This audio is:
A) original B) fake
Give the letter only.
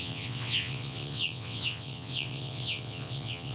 B